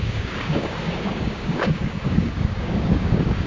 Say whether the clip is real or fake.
fake